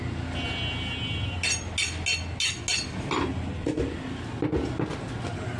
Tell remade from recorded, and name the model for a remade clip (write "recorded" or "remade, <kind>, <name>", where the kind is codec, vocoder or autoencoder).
recorded